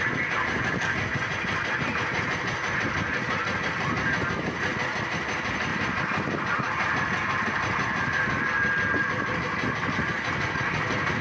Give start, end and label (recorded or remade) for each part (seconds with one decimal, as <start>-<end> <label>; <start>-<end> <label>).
0.0-11.2 recorded